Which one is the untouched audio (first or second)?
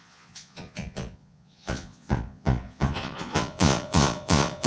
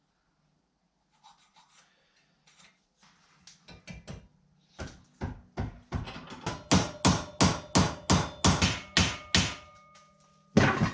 second